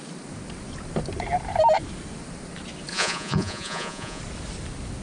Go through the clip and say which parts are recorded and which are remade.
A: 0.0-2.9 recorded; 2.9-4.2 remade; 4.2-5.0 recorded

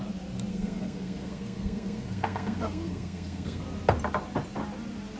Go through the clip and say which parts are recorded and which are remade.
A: 0.0-0.5 recorded; 0.5-3.6 remade; 3.6-5.2 recorded

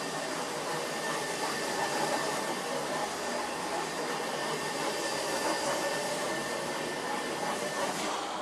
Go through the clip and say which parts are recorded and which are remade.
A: 0.0-8.4 remade

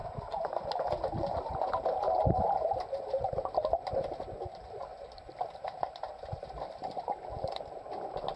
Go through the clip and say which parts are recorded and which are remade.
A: 0.0-4.9 recorded; 4.9-7.1 remade; 7.1-8.4 recorded

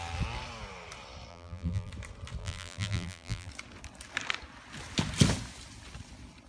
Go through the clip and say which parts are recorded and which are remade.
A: 0.0-1.3 recorded; 1.3-1.9 remade; 1.9-2.4 recorded; 2.4-3.5 remade; 3.5-6.5 recorded

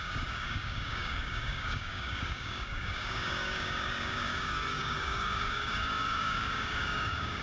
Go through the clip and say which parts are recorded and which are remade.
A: 0.0-7.4 remade

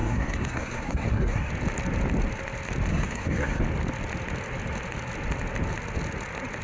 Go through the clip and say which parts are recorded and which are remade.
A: 0.0-1.5 remade; 1.5-2.9 recorded; 2.9-3.6 remade; 3.6-6.6 recorded